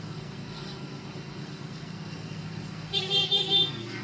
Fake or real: fake